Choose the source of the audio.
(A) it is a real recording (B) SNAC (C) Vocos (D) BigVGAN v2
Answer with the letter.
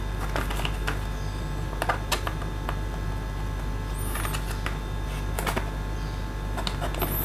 A